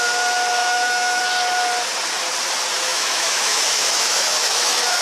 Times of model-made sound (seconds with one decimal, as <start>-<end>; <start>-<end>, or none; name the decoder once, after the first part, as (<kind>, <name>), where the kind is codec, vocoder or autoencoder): 0.6-1.2 (autoencoder, DAC-VAE); 2.9-5.0